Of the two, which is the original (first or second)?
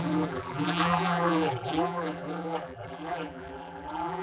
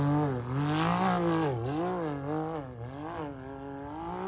second